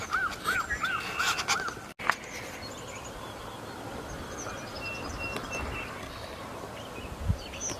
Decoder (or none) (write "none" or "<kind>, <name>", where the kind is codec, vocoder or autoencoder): none